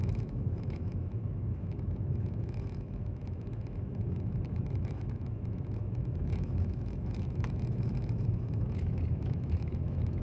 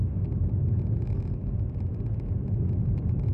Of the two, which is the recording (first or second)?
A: second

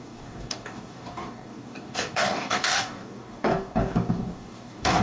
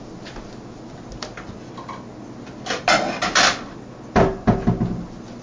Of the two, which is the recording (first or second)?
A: second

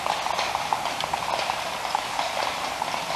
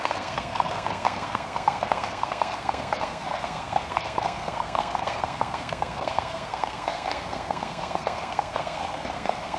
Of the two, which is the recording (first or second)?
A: first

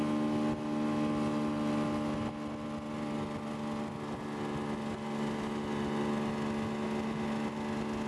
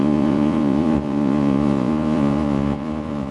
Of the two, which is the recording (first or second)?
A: first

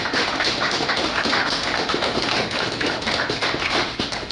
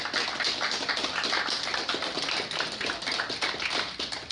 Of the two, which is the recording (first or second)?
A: second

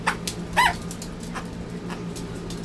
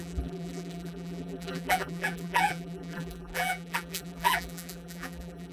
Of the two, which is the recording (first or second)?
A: first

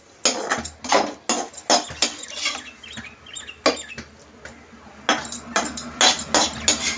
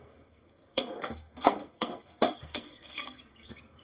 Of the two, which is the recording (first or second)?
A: first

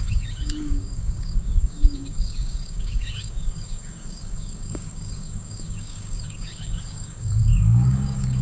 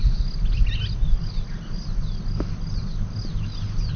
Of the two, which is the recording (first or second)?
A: second